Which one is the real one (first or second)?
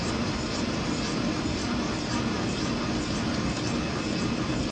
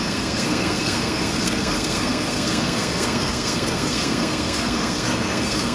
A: first